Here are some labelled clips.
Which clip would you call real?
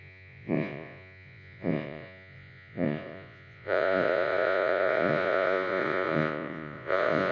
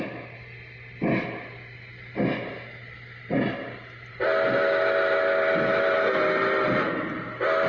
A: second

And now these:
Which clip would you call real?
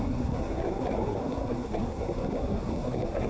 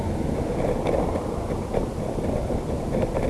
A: second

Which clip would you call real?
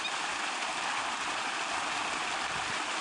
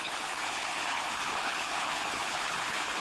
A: first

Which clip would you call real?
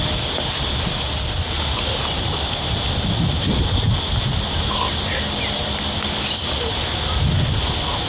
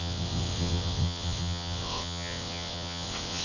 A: first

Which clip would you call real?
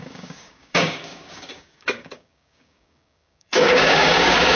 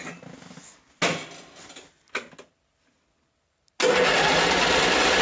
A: second